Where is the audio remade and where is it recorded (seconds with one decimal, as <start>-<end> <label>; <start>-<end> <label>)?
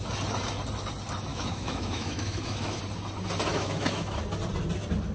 0.0-1.3 recorded; 1.3-2.8 remade; 2.8-3.5 recorded; 3.5-4.2 remade; 4.2-5.1 recorded